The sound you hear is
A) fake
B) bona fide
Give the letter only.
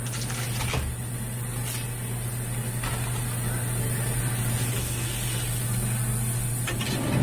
B